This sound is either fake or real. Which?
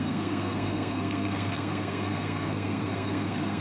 fake